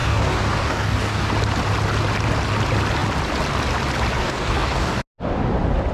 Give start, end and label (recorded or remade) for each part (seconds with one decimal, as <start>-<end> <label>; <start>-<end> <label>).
0.0-1.3 remade; 1.3-4.2 recorded; 4.2-5.0 remade; 5.0-5.9 recorded